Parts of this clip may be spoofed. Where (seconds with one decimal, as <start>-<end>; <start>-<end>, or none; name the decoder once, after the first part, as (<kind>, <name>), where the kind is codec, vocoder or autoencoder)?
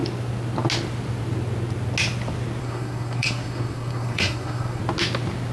2.6-4.8 (codec, SNAC)